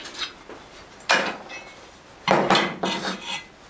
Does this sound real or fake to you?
real